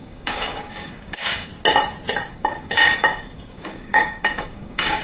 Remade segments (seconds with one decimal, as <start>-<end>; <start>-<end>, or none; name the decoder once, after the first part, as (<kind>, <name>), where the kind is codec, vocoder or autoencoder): 0.0-1.5 (codec, DAC); 2.3-5.0

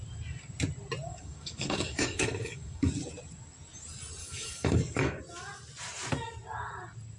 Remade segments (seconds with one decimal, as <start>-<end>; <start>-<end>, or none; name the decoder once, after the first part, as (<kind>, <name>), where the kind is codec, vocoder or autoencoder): 1.1-2.9 (codec, DAC); 4.2-5.2

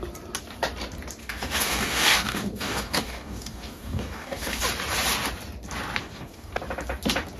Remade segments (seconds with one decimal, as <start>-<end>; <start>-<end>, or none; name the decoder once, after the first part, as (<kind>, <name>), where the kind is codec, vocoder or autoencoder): 1.2-4.6 (codec, DAC); 6.0-6.5

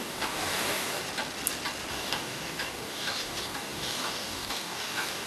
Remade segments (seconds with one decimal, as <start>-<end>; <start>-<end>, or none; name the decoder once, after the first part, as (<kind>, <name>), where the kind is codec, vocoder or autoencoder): 0.0-1.0 (codec, DAC); 1.9-5.3

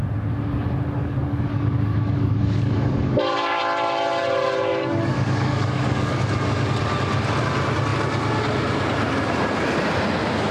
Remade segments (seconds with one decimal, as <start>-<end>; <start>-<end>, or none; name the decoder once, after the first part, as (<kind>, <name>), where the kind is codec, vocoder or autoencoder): 1.0-3.6 (codec, DAC); 4.7-6.2